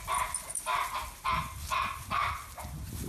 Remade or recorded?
recorded